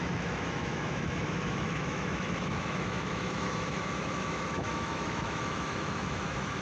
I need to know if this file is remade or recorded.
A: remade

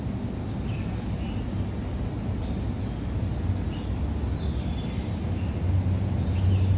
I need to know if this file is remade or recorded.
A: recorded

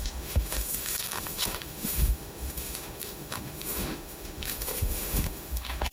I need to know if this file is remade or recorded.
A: remade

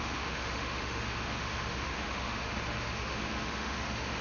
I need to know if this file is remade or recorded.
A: remade